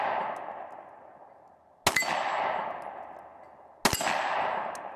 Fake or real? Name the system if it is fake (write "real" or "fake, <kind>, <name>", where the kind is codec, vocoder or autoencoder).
real